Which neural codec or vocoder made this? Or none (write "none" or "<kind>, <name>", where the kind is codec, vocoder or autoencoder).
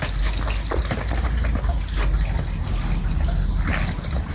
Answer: none